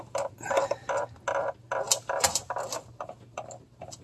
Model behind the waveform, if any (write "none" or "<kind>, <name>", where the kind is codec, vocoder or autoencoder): none